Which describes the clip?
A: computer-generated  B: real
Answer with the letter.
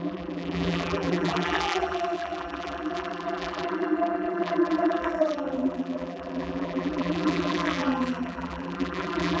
A